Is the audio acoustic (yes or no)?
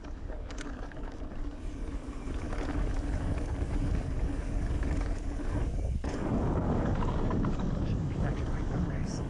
no